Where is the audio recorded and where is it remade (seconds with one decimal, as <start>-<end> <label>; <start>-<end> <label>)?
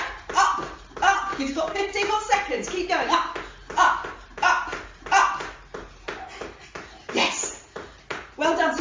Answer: 0.0-1.3 recorded; 1.3-2.1 remade; 2.1-8.8 recorded